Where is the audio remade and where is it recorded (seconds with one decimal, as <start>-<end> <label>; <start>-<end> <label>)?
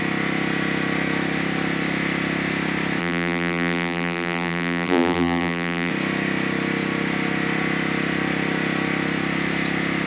0.0-3.0 recorded; 3.0-5.9 remade; 5.9-10.1 recorded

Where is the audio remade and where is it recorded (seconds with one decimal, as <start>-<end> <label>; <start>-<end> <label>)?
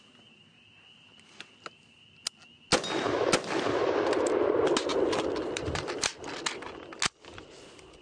0.0-4.9 recorded; 4.9-5.9 remade; 5.9-8.0 recorded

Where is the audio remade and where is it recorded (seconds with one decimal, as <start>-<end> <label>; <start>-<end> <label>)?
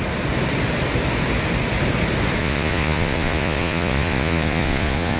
0.0-2.4 recorded; 2.4-5.2 remade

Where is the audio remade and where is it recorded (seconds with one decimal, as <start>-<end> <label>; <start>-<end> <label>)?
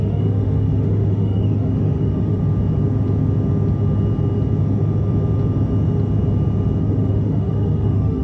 0.0-2.4 remade; 2.4-6.8 recorded; 6.8-8.2 remade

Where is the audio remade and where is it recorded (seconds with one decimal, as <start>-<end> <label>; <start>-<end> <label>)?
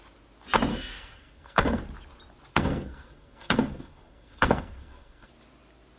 0.0-0.7 recorded; 0.7-1.8 remade; 1.8-2.5 recorded; 2.5-5.3 remade; 5.3-6.0 recorded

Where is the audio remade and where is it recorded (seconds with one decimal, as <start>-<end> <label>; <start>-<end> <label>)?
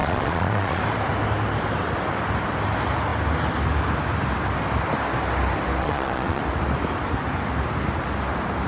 0.0-0.8 remade; 0.8-5.8 recorded; 5.8-6.4 remade; 6.4-8.7 recorded